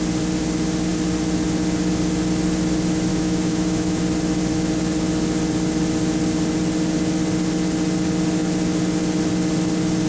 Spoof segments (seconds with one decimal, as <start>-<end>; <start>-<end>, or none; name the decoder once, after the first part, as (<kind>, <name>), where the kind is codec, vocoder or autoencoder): 3.1-4.0 (autoencoder, DAC-VAE)